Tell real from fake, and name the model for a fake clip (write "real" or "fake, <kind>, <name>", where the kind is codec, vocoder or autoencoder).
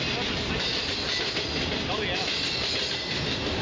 real